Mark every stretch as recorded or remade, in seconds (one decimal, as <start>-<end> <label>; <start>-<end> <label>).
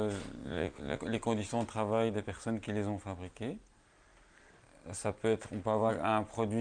0.0-0.4 recorded; 0.4-1.0 remade; 1.0-6.6 recorded